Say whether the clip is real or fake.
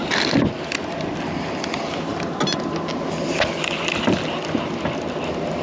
real